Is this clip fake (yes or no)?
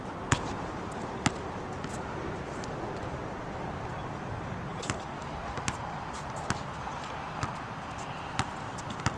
no